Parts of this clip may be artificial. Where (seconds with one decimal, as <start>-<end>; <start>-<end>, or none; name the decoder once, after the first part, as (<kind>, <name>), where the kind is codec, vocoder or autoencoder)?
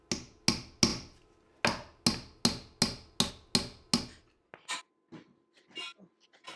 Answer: none